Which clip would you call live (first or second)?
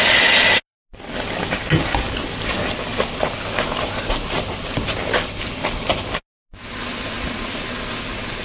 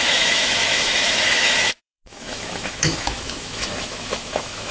first